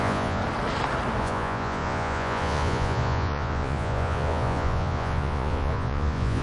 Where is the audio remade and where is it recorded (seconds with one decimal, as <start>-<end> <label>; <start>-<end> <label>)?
0.0-0.4 remade; 0.4-1.2 recorded; 1.2-6.4 remade